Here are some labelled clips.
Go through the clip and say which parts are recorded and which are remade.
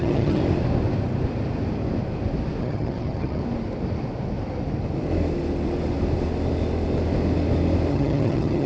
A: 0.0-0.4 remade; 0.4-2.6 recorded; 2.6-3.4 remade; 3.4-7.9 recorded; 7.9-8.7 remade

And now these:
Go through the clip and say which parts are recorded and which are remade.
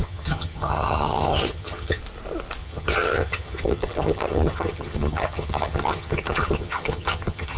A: 0.0-2.0 remade; 2.0-2.6 recorded; 2.6-7.6 remade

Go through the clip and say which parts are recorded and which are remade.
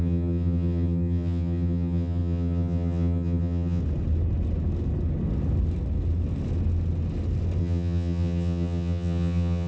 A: 0.0-3.8 remade; 3.8-7.6 recorded; 7.6-9.7 remade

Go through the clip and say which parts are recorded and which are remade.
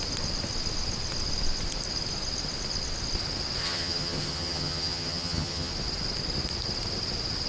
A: 0.0-3.6 recorded; 3.6-5.7 remade; 5.7-7.5 recorded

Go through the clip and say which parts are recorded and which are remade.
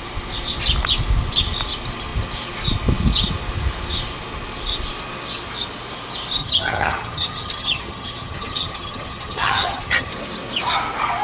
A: 0.0-6.4 recorded; 6.4-10.1 remade; 10.1-11.2 recorded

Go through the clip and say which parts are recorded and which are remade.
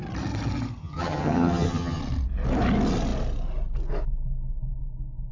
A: 0.0-0.8 recorded; 0.8-2.0 remade; 2.0-5.3 recorded